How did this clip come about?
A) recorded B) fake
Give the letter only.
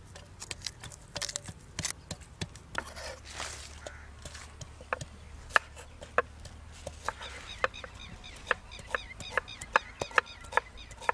A